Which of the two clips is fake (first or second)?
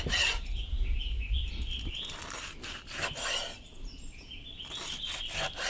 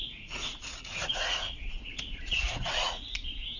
second